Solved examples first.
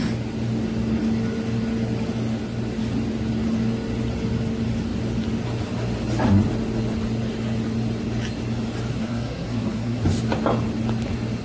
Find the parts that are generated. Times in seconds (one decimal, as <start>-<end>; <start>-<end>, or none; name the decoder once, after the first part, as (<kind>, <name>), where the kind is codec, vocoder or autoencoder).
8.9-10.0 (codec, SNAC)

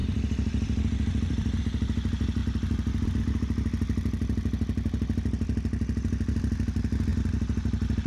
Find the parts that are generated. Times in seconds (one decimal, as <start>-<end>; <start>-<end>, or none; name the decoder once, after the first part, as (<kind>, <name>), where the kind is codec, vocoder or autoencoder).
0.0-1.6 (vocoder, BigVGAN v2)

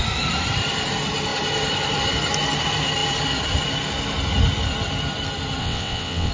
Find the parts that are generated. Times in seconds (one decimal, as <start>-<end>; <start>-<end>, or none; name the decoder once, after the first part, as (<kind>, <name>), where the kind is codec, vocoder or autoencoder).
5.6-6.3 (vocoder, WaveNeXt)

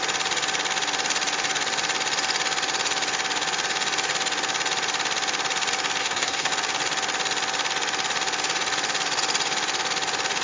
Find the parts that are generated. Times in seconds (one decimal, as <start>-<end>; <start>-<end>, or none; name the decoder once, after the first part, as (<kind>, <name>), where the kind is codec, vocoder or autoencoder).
6.0-6.5 (codec, SNAC)